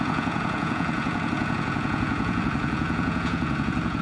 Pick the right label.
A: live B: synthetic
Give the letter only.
B